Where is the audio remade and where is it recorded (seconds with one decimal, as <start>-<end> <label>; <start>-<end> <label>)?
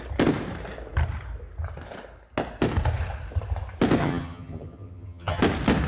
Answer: 0.0-4.0 recorded; 4.0-5.4 remade; 5.4-5.9 recorded